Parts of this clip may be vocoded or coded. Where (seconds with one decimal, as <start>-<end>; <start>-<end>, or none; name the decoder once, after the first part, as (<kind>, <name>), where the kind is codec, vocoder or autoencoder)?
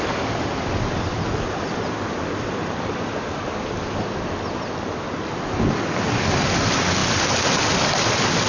none